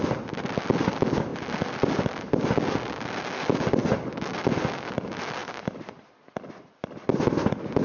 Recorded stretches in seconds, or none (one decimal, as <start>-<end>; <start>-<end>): 0.0-1.3; 1.9-7.8

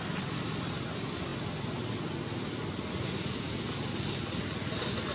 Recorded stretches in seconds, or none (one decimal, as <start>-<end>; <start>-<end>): 0.0-5.1

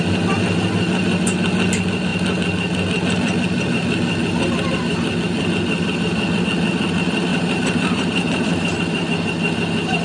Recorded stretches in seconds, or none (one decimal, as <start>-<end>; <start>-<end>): 0.0-7.3; 8.8-10.0

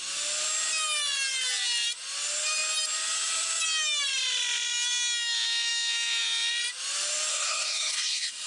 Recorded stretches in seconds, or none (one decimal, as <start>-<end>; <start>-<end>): 0.0-7.3